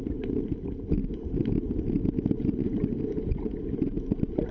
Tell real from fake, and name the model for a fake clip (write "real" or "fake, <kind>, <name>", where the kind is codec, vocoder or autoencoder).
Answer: real